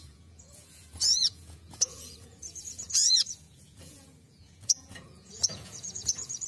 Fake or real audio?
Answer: fake